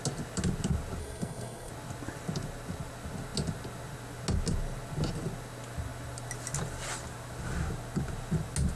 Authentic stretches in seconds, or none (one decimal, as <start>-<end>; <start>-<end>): 0.0-1.0; 1.7-8.8